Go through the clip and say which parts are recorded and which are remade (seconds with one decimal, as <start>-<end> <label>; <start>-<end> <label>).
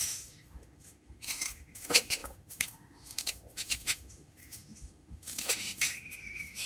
0.0-6.7 remade